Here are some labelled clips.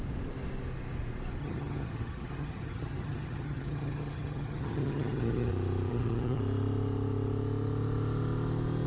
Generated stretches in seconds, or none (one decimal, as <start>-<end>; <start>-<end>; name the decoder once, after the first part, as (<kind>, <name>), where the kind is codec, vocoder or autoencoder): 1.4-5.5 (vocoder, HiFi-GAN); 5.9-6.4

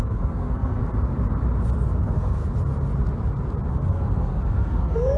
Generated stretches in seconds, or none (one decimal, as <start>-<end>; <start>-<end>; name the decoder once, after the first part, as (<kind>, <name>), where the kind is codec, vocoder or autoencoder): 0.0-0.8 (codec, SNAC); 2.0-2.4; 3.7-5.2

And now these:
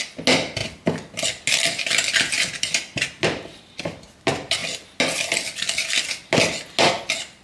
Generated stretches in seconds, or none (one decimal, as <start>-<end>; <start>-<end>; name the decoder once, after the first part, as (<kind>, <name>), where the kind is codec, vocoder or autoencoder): none

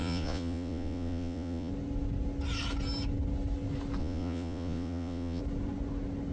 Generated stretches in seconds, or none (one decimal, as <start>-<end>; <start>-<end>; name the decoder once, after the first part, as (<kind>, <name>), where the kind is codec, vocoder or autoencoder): 0.0-1.7 (vocoder, Vocos); 4.0-5.4

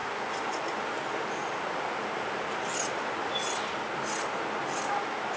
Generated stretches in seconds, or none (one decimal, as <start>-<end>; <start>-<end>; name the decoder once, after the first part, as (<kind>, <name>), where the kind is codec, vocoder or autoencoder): 0.0-0.8 (vocoder, Vocos)

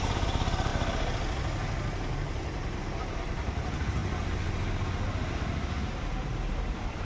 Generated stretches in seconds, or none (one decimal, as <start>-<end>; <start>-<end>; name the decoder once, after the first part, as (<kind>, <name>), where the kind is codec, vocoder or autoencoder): 0.0-0.7 (vocoder, BigVGAN v2); 3.0-4.0; 5.8-7.0